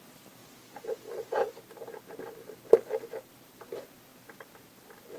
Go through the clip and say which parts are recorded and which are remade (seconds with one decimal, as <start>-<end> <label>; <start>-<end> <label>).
0.0-5.2 recorded